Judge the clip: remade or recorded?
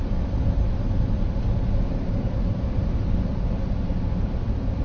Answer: recorded